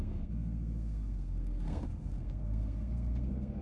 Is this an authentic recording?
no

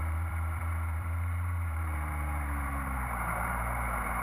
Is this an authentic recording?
no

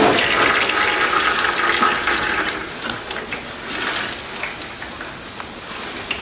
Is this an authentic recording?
yes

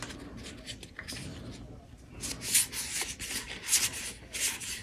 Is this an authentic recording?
yes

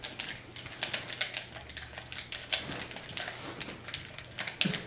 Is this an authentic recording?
yes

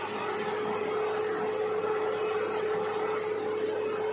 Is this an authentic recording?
yes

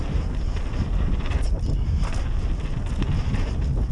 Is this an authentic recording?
no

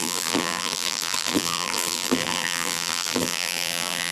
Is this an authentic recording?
no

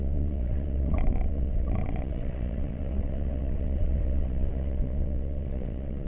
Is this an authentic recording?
no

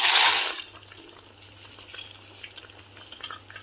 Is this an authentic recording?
yes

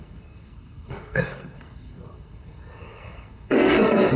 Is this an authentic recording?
no